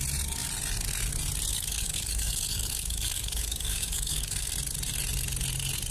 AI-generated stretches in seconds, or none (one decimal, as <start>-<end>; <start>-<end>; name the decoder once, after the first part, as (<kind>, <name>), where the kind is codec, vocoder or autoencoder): 1.5-4.5 (codec, DAC)